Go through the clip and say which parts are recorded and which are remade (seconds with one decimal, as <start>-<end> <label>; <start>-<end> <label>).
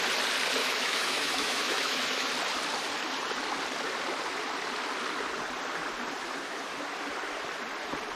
0.0-0.6 recorded; 0.6-2.3 remade; 2.3-8.2 recorded